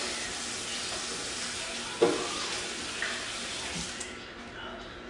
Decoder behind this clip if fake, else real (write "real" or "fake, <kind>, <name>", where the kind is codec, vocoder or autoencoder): real